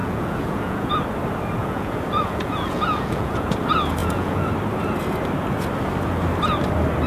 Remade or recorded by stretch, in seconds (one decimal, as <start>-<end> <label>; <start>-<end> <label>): 0.0-0.9 remade; 0.9-1.6 recorded; 1.6-3.6 remade; 3.6-4.0 recorded; 4.0-4.5 remade; 4.5-7.1 recorded